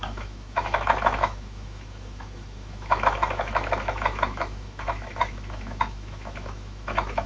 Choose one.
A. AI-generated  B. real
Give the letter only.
A